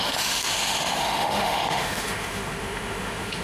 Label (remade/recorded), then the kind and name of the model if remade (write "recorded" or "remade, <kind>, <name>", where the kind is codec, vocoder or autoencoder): remade, autoencoder, DAC-VAE